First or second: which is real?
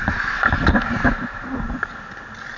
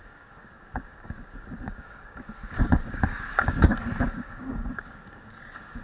first